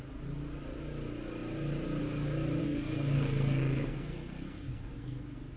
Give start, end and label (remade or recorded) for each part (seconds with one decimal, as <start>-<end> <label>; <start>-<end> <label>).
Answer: 0.0-2.6 recorded; 2.6-5.6 remade